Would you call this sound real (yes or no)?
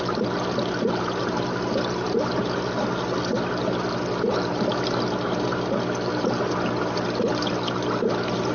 yes